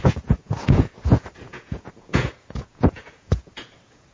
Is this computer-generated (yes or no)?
yes